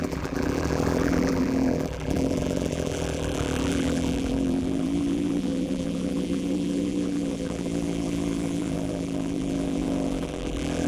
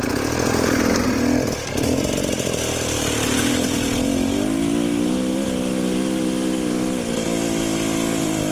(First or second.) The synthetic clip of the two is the first